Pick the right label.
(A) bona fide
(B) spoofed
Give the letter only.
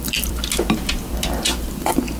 B